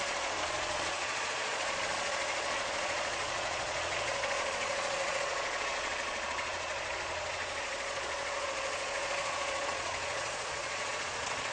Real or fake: fake